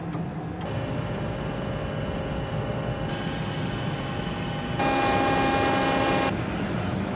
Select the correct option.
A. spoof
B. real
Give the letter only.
B